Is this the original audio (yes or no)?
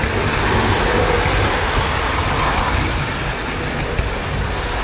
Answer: yes